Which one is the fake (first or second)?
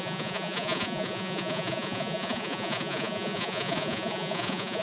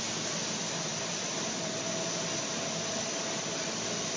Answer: first